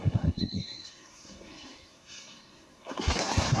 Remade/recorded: remade